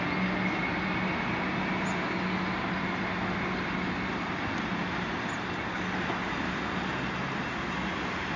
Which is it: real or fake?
real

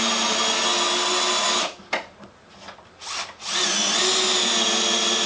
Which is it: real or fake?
real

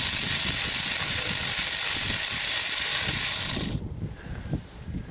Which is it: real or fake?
fake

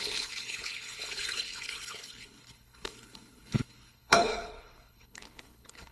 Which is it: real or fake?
fake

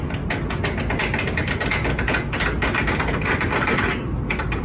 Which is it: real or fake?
real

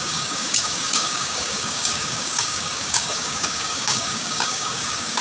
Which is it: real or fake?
fake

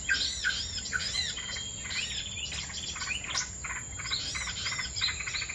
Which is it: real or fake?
real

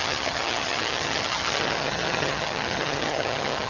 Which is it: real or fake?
fake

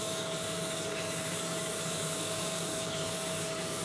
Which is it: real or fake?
fake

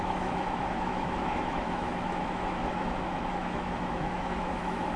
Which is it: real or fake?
fake